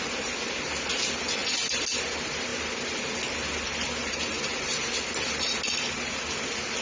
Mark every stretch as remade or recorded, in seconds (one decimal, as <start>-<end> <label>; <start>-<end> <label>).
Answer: 0.0-6.8 recorded